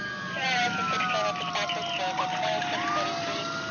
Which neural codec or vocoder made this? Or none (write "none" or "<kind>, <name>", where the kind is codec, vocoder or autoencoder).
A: none